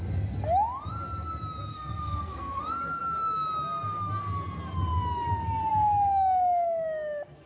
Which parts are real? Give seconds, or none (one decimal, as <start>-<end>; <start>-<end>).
0.0-1.7; 2.6-7.5